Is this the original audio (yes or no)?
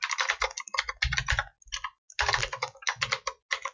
yes